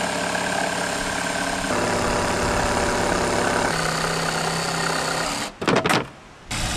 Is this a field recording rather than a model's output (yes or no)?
yes